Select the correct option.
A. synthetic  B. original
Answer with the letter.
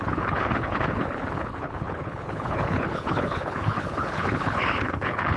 A